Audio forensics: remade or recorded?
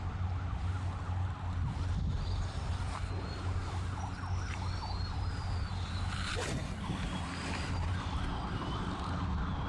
recorded